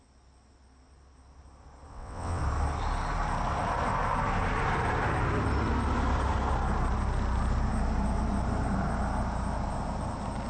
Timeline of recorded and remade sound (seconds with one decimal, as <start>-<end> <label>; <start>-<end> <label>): 0.0-1.9 recorded; 1.9-2.4 remade; 2.4-10.5 recorded